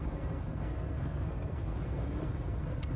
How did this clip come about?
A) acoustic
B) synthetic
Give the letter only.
B